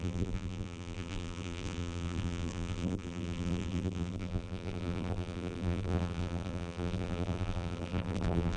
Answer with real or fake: fake